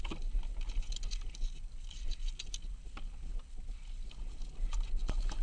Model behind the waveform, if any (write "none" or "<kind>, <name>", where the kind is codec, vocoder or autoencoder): none